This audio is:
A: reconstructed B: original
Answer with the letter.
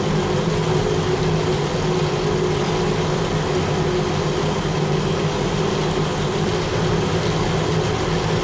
B